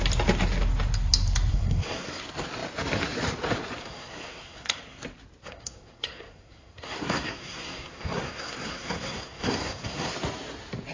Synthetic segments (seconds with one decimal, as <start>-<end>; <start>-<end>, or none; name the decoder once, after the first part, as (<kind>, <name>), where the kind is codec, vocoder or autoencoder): 1.5-2.2 (codec, SNAC); 3.8-5.0; 5.4-10.1